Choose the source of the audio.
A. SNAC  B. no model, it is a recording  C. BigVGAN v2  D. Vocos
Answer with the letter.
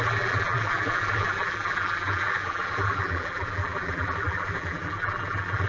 C